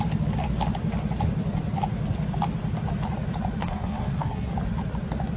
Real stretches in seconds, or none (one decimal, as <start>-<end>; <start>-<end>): 0.0-3.6; 4.5-5.4